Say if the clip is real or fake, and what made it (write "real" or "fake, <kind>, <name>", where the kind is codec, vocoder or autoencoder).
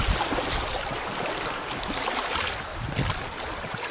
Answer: real